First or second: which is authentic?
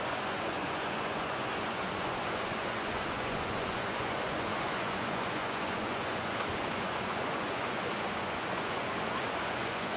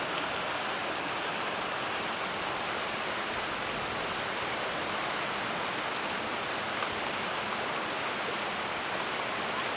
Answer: second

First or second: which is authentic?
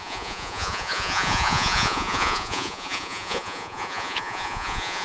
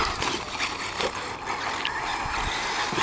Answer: second